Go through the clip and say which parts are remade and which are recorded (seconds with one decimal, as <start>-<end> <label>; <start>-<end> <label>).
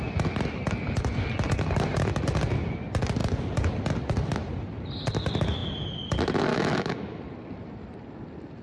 0.0-6.5 recorded; 6.5-7.2 remade; 7.2-8.6 recorded